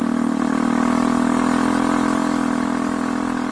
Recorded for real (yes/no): yes